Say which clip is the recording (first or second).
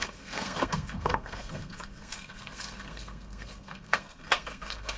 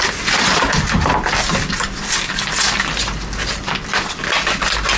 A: second